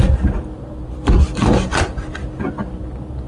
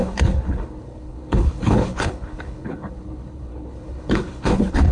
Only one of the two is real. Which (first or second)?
first